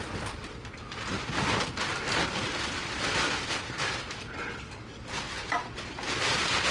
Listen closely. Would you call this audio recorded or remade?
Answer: recorded